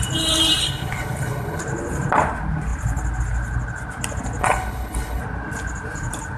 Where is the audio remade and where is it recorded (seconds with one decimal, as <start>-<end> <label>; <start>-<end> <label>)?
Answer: 0.0-0.6 recorded; 0.6-1.6 remade; 1.6-4.4 recorded; 4.4-5.2 remade; 5.2-6.4 recorded

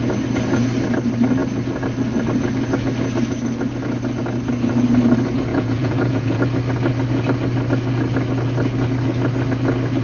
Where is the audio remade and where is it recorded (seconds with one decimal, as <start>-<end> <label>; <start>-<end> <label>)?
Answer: 0.0-5.5 recorded; 5.5-6.4 remade; 6.4-10.0 recorded

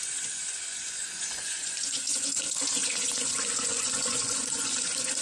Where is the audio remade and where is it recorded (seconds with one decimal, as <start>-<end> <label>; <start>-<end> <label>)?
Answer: 0.0-5.2 remade

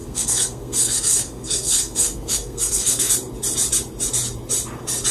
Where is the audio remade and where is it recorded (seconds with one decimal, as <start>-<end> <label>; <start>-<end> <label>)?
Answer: 0.0-3.1 remade; 3.1-5.1 recorded

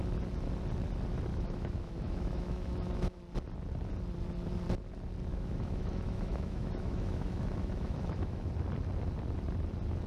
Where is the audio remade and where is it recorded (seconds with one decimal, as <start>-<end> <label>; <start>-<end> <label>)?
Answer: 0.0-1.3 recorded; 1.3-3.2 remade; 3.2-5.3 recorded; 5.3-8.5 remade; 8.5-10.1 recorded

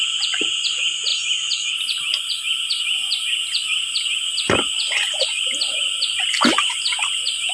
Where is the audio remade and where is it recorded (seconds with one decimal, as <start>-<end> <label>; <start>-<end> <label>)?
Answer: 0.0-7.5 recorded

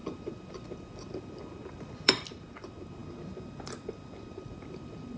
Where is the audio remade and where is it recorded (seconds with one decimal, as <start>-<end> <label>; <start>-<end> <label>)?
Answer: 0.0-3.0 remade; 3.0-4.4 recorded; 4.4-5.2 remade

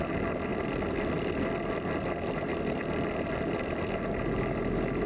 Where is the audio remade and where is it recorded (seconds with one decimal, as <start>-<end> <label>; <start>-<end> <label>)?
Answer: 0.0-5.1 recorded